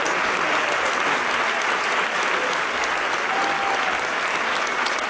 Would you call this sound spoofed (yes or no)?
no